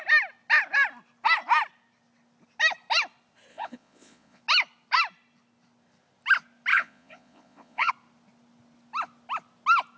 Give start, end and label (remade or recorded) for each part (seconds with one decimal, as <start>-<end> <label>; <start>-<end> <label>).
0.0-3.5 recorded; 3.5-4.4 remade; 4.4-6.7 recorded; 6.7-7.9 remade; 7.9-10.0 recorded